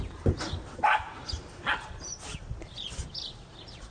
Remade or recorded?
recorded